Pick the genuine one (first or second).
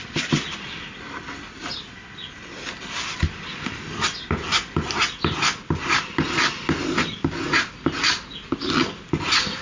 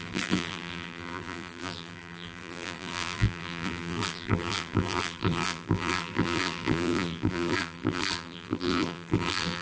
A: first